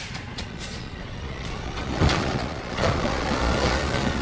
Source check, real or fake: fake